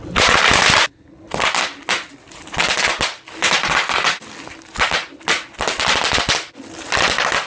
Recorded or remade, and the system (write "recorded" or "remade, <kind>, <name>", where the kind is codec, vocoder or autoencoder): recorded